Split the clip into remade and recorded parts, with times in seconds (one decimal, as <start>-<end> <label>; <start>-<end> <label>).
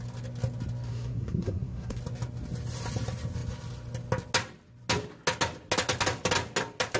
0.0-0.9 recorded; 0.9-2.0 remade; 2.0-7.0 recorded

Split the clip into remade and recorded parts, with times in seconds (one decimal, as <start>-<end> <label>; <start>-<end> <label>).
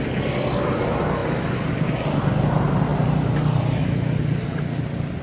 0.0-5.2 recorded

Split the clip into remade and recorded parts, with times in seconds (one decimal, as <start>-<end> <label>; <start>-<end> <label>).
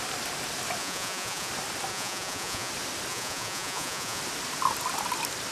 0.0-0.8 recorded; 0.8-1.5 remade; 1.5-1.9 recorded; 1.9-2.7 remade; 2.7-3.1 recorded; 3.1-4.2 remade; 4.2-5.5 recorded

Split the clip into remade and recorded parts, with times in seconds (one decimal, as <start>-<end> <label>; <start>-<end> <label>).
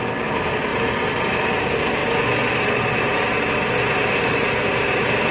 0.0-5.3 recorded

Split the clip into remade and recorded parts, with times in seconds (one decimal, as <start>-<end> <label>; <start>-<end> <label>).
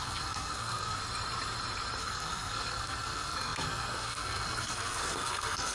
0.0-1.0 remade; 1.0-2.0 recorded; 2.0-5.7 remade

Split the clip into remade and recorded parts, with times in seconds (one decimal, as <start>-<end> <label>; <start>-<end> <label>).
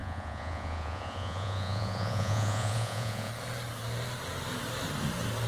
0.0-3.3 remade; 3.3-5.5 recorded